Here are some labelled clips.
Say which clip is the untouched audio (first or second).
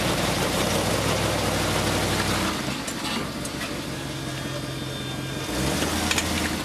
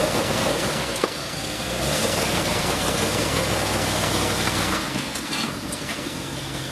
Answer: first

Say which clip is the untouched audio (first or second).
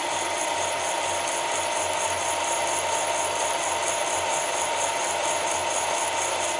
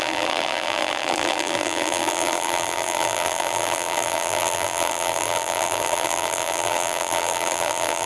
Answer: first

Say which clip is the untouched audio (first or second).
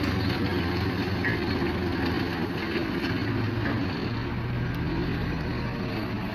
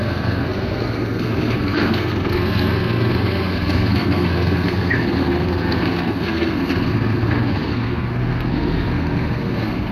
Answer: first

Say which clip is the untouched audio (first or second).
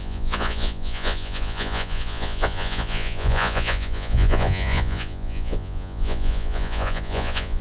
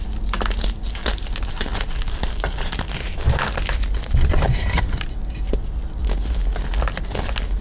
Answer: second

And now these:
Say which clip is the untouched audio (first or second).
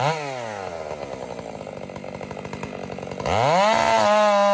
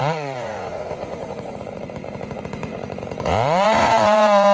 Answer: first